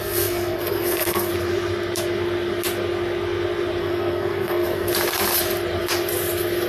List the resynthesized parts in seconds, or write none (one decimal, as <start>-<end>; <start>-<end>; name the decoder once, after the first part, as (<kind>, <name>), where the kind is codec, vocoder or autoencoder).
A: 0.0-1.3 (codec, SNAC); 3.8-4.9